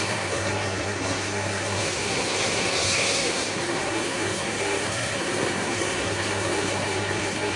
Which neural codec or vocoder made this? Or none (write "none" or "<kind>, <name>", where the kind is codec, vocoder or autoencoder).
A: codec, SNAC